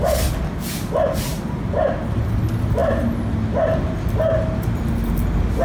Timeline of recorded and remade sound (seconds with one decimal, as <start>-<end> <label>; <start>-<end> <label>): 0.0-1.3 recorded; 1.3-1.9 remade; 1.9-5.6 recorded